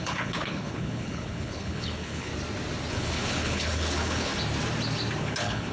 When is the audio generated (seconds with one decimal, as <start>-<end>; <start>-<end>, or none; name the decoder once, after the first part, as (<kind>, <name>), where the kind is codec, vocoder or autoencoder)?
0.0-2.3 (codec, HILCodec); 2.9-4.3; 5.2-5.7